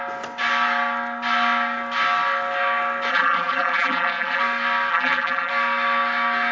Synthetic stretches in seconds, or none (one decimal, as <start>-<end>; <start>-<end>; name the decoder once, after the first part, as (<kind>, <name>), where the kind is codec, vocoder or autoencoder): 3.1-4.4 (vocoder, BigVGAN v2); 4.9-5.5